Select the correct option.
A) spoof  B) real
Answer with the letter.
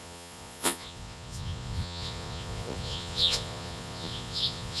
A